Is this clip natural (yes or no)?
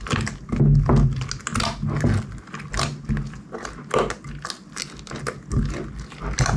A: yes